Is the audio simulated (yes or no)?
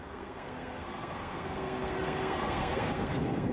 yes